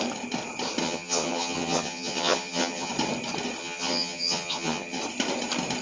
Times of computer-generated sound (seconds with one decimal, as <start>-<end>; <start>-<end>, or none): 0.8-2.9; 3.6-5.0